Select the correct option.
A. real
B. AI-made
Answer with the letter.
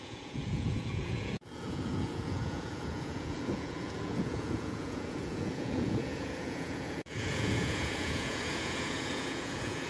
B